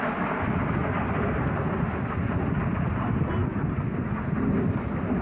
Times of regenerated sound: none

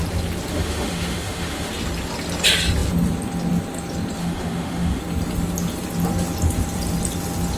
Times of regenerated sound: 0.5-1.7 (autoencoder, DAC-VAE); 4.2-5.0

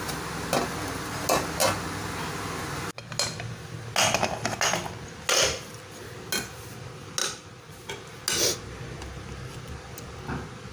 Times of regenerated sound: none

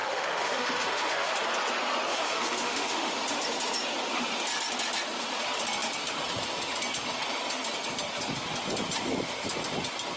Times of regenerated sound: 0.0-1.3 (autoencoder, DAC-VAE); 2.1-3.1

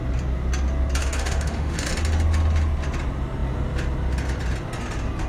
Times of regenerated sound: 1.0-1.9 (autoencoder, DAC-VAE)

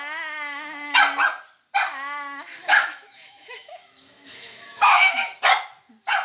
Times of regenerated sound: 2.6-5.4 (autoencoder, DAC-VAE)

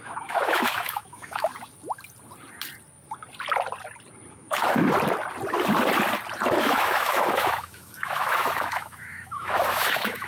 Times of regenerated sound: 0.0-1.5 (autoencoder, DAC-VAE); 4.3-4.8; 6.6-10.3